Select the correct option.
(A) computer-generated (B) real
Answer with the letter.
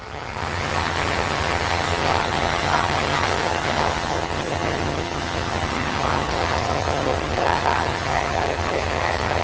A